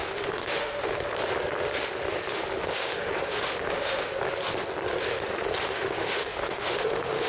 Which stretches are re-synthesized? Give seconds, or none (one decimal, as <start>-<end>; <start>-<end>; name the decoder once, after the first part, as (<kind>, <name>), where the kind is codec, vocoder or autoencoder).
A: 0.0-0.9 (autoencoder, DAC-VAE); 2.3-4.1; 5.6-7.3